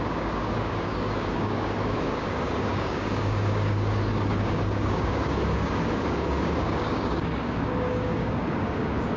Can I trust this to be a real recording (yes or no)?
no